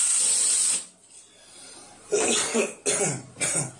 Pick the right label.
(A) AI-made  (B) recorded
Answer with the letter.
B